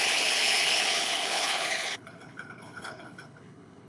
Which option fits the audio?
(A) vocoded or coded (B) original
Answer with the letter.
A